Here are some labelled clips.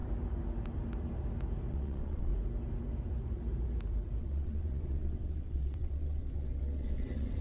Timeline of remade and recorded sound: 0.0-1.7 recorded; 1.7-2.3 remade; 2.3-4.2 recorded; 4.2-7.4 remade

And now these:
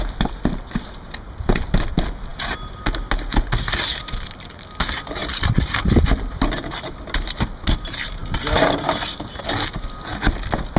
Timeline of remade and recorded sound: 0.0-10.8 recorded

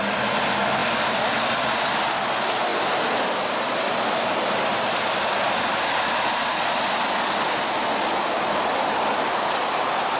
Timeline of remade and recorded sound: 0.0-10.2 recorded

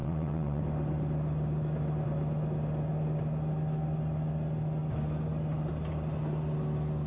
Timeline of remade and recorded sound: 0.0-0.6 remade; 0.6-7.1 recorded

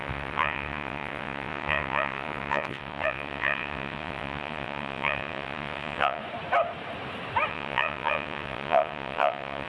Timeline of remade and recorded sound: 0.0-6.2 remade; 6.2-7.5 recorded; 7.5-9.7 remade